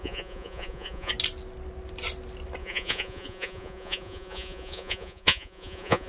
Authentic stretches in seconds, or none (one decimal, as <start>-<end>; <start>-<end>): 1.1-2.6